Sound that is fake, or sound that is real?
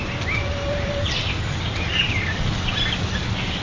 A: real